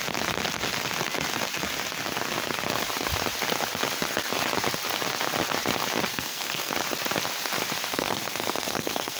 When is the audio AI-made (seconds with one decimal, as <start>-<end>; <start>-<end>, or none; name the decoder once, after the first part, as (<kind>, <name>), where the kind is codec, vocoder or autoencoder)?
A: 6.1-6.7 (codec, SNAC); 7.9-9.2